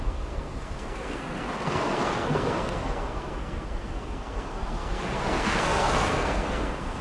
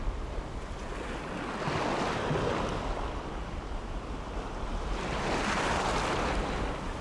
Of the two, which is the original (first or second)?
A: second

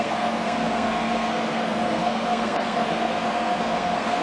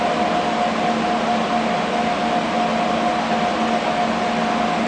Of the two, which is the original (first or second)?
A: second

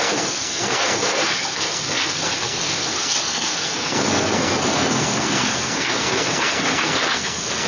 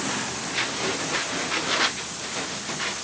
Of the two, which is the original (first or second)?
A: second